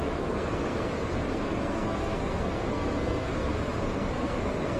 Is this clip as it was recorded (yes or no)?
no